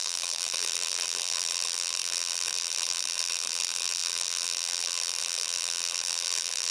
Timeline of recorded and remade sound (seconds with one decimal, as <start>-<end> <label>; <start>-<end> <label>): 0.0-6.7 remade